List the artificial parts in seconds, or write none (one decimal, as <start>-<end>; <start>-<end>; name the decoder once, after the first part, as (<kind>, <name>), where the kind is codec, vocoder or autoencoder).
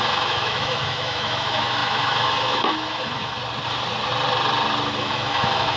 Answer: 0.0-3.4 (autoencoder, DAC-VAE); 5.0-5.8